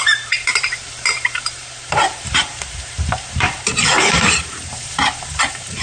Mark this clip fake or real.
fake